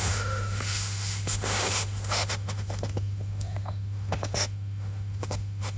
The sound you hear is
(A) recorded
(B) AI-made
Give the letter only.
B